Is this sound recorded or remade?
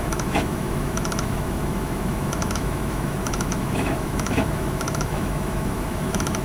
remade